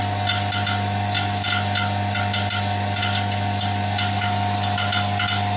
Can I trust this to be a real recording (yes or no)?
yes